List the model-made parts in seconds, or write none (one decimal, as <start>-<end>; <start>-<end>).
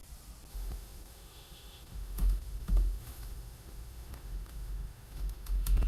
0.5-5.9